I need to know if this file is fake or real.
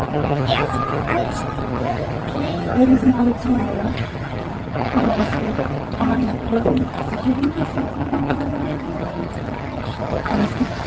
fake